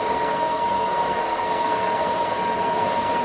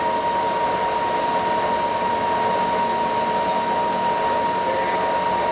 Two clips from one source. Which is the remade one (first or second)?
first